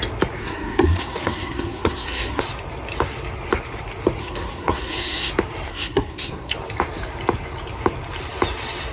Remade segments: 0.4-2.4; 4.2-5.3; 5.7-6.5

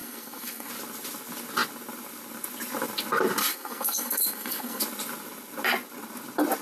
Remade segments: 0.0-0.7; 3.4-4.8

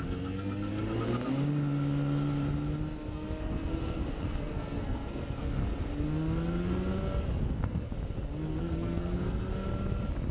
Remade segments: 0.0-0.7; 3.1-5.6; 7.4-7.9; 8.6-9.5

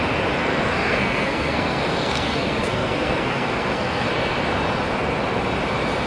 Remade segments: 0.4-4.1

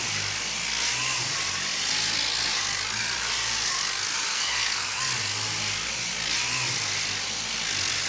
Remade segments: 4.3-5.0

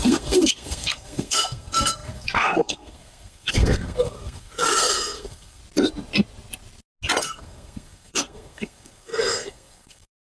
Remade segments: 0.0-5.6; 7.2-10.3